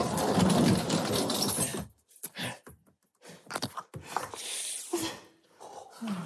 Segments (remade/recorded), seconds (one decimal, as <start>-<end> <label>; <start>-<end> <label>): 0.0-6.3 recorded